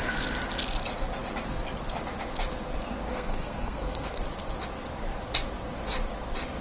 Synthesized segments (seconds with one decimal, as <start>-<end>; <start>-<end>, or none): 3.1-4.2